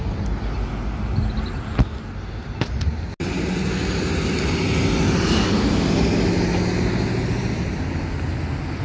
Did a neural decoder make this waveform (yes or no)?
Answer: no